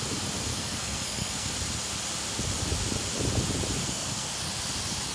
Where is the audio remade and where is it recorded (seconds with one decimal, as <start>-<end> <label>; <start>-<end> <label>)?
0.0-0.5 recorded; 0.5-1.5 remade; 1.5-3.8 recorded; 3.8-4.3 remade; 4.3-5.1 recorded